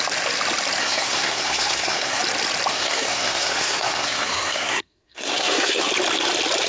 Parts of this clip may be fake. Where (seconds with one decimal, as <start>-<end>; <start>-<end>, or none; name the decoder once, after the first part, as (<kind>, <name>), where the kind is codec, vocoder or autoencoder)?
0.8-2.2 (codec, SNAC); 2.7-5.9